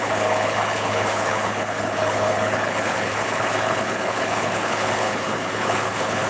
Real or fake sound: fake